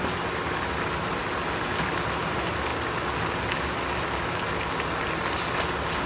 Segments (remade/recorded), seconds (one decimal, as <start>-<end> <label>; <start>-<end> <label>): 0.0-6.1 recorded